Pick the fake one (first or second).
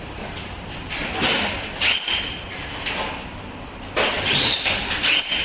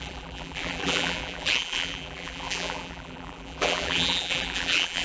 second